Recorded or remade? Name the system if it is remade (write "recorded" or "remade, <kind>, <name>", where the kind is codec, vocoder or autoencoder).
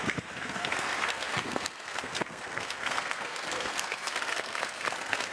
remade, codec, SNAC